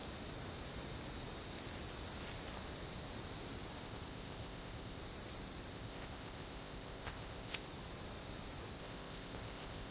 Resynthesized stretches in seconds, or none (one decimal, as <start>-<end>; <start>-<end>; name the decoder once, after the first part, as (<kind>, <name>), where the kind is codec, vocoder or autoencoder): 3.8-5.0 (codec, ZipCodec); 5.7-7.6; 8.8-9.9